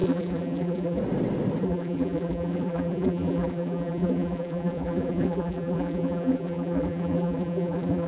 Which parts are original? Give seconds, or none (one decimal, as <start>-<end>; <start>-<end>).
1.0-1.6

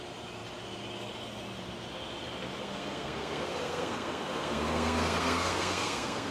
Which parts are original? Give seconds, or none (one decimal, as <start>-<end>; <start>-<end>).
0.0-2.6

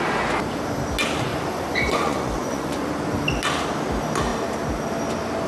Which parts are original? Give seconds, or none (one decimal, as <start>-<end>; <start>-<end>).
0.0-1.3; 2.9-5.5

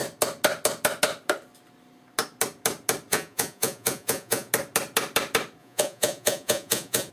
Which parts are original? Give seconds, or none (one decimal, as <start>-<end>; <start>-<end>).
0.0-3.1; 4.5-5.6

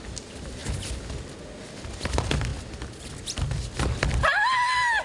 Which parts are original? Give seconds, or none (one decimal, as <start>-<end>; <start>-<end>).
0.0-5.0

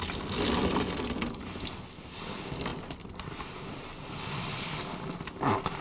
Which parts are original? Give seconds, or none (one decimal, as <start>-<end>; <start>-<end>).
0.0-5.8

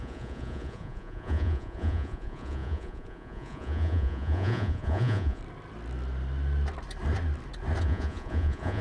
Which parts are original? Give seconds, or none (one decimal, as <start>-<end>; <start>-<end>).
5.4-7.8